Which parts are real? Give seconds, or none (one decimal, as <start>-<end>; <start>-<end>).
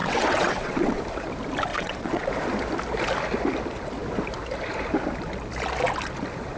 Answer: 1.0-1.7; 2.3-6.6